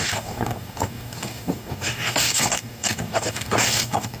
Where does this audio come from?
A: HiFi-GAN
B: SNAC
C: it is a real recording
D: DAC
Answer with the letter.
D